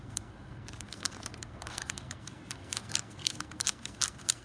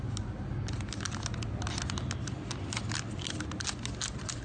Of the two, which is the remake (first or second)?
first